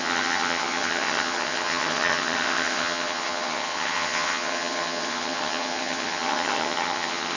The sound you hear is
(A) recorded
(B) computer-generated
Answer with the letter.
B